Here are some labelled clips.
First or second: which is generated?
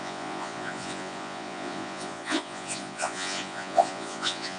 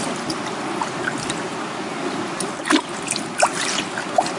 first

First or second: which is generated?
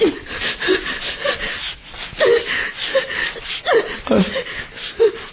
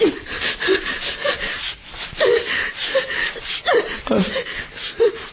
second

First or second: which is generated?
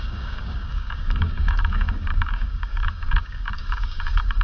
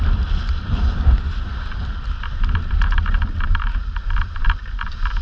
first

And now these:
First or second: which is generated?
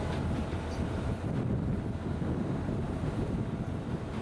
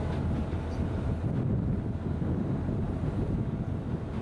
first